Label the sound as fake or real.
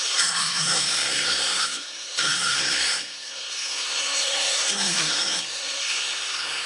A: fake